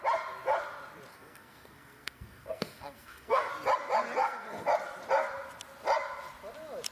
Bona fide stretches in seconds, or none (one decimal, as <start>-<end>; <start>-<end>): 0.0-1.1; 3.5-4.2; 4.7-6.9